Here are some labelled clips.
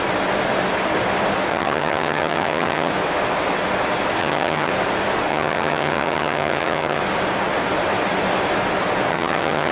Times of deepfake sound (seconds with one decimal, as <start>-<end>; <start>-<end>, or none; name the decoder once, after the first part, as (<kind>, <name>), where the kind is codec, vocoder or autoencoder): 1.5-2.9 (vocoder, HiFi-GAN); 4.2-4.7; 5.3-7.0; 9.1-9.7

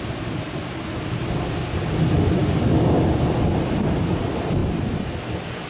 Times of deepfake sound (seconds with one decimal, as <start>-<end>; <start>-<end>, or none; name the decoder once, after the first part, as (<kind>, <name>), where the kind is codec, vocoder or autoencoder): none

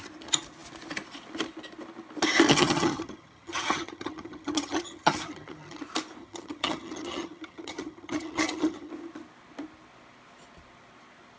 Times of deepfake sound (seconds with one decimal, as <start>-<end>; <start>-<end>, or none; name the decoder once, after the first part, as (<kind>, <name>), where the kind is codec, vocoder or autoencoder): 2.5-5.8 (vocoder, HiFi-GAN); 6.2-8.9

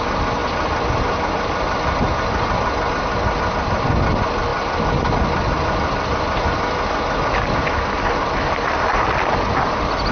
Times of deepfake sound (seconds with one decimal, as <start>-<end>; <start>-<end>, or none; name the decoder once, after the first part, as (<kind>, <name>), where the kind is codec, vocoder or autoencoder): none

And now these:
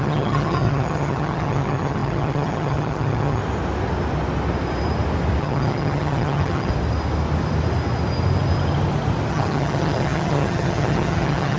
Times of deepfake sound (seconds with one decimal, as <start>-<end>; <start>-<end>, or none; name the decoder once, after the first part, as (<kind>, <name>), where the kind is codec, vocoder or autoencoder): 0.0-3.4 (vocoder, HiFi-GAN); 5.4-6.7; 9.3-11.6

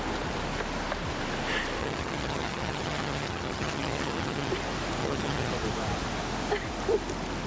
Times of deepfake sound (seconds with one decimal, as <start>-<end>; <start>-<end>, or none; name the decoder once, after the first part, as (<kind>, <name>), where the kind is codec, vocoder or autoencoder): 1.8-4.5 (vocoder, HiFi-GAN); 5.0-5.5

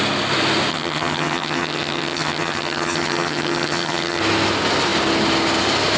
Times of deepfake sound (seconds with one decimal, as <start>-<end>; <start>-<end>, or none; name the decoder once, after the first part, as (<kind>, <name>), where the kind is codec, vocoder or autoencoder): 0.7-4.2 (vocoder, HiFi-GAN)

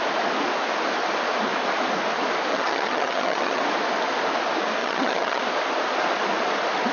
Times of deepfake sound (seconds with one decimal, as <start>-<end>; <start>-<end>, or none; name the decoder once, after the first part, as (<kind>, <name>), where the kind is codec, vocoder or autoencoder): 2.5-3.6 (vocoder, HiFi-GAN); 4.8-5.4